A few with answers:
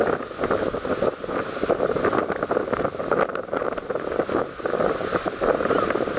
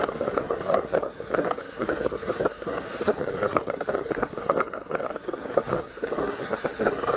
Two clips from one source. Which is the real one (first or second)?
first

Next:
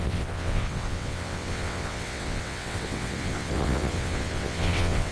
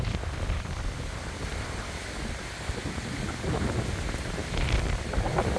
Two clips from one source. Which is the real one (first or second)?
second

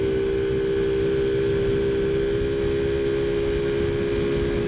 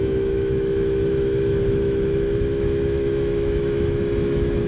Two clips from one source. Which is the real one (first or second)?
first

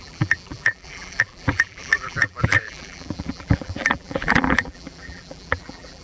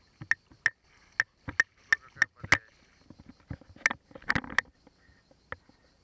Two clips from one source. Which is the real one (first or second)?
second